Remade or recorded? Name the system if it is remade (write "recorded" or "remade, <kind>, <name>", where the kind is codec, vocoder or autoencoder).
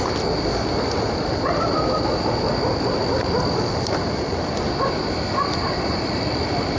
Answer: recorded